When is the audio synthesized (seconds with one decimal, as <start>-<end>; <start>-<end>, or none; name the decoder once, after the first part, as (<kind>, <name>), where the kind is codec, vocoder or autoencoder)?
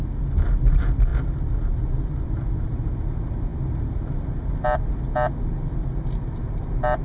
none